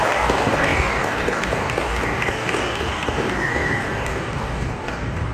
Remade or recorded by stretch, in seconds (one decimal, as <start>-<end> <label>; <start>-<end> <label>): 0.0-5.3 remade